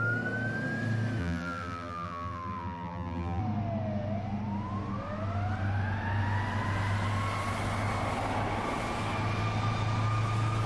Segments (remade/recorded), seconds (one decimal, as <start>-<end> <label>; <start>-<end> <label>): 0.0-1.2 recorded; 1.2-3.4 remade; 3.4-10.7 recorded